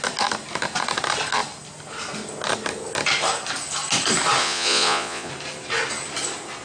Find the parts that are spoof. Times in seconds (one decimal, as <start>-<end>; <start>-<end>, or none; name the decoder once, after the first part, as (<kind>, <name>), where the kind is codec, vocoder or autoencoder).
4.4-5.3 (vocoder, Vocos)